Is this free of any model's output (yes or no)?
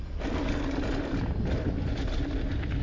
yes